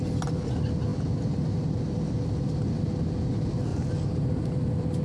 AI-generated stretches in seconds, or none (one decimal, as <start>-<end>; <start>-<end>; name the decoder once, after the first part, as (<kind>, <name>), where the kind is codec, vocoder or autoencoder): none